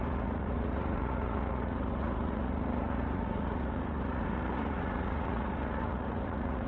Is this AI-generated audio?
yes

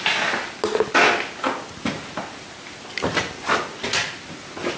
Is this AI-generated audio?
no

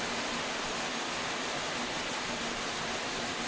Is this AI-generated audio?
no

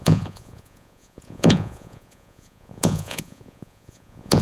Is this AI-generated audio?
yes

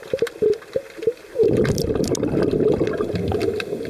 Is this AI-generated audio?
no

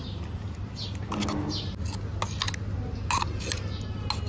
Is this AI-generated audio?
no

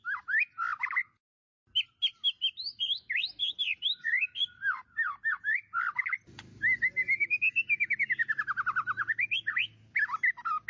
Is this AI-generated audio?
no